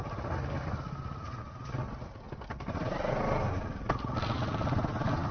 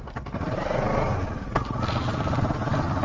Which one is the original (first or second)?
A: second